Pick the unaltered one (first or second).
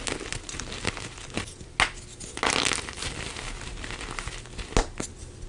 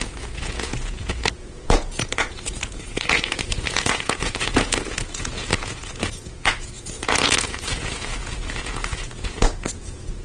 first